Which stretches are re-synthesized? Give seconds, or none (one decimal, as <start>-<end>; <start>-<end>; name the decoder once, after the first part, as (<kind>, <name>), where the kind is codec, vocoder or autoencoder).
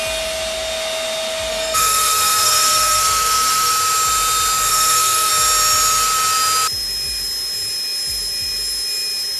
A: 1.5-3.7 (codec, SNAC); 4.7-5.3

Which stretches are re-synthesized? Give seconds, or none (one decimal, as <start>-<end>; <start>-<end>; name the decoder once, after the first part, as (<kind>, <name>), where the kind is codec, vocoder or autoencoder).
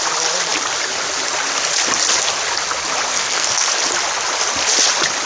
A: 3.1-3.7 (codec, SNAC)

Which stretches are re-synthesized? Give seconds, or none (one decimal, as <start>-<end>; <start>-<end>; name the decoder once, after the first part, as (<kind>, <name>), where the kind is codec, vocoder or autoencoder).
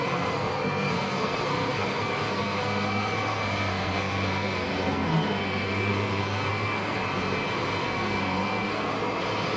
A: 0.0-7.0 (codec, SNAC); 7.8-8.9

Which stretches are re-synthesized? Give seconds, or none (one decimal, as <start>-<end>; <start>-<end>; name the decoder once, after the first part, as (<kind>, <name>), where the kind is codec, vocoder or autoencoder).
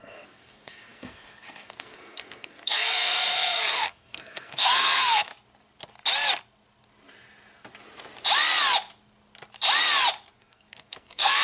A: 0.0-5.3 (codec, SNAC); 10.4-11.4